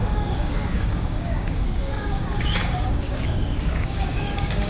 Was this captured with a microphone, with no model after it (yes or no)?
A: no